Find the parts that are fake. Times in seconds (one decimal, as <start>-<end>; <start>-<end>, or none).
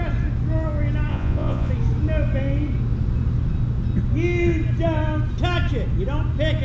1.1-1.7